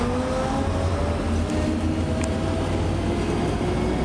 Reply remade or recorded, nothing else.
recorded